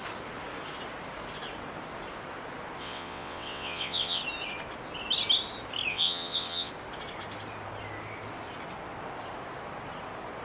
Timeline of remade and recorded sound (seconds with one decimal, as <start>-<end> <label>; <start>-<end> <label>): 0.0-2.8 recorded; 2.8-4.2 remade; 4.2-5.9 recorded; 5.9-6.7 remade; 6.7-10.4 recorded